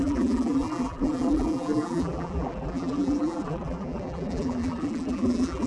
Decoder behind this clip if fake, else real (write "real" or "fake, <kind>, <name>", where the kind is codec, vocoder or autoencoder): fake, vocoder, BigVGAN v2